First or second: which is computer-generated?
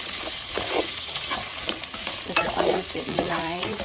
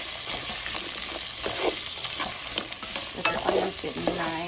first